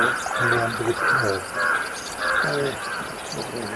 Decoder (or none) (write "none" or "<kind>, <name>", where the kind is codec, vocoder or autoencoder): none